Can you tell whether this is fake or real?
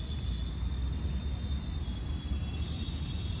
real